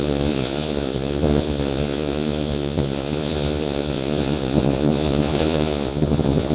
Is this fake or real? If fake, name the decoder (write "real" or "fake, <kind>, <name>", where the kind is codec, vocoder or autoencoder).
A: fake, vocoder, Vocos